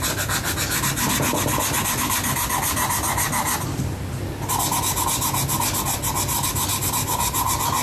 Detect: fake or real real